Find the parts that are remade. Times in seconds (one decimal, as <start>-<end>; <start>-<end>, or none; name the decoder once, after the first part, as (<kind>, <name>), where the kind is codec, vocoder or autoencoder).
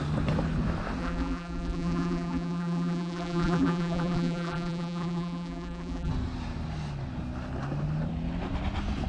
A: 1.0-6.1 (vocoder, BigVGAN v2)